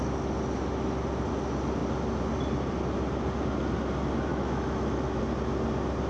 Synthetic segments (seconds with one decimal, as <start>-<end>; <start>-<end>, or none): 4.3-5.2